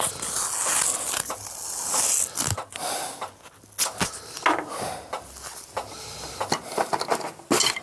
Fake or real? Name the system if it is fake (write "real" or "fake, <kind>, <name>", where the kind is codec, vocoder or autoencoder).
real